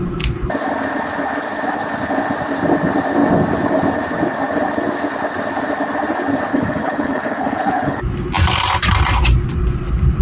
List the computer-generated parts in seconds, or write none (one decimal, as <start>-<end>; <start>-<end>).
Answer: 6.5-8.0